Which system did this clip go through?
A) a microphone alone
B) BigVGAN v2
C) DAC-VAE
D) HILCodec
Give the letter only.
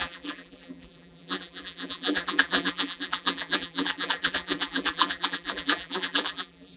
B